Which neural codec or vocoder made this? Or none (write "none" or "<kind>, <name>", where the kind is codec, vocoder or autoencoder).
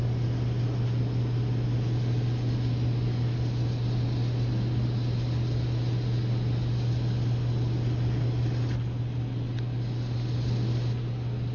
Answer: none